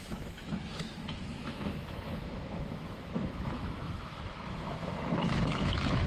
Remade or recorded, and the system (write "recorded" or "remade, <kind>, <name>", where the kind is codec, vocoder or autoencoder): remade, autoencoder, DAC-VAE